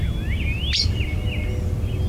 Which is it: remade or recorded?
recorded